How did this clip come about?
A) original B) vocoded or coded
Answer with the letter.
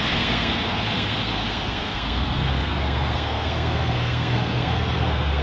B